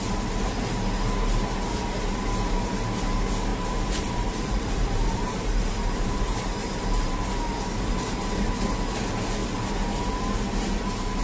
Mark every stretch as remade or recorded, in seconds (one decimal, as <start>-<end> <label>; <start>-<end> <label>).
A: 0.0-3.5 recorded; 3.5-7.1 remade; 7.1-11.2 recorded